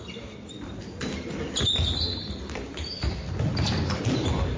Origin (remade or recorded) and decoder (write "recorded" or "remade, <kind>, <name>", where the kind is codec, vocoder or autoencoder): recorded